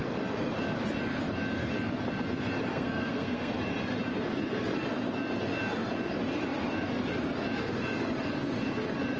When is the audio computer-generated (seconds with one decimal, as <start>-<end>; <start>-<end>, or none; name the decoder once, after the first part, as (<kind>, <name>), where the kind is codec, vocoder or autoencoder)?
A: 2.7-3.5 (codec, SNAC)